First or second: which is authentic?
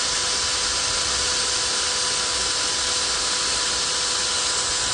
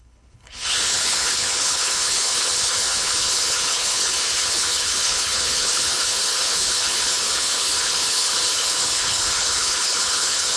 first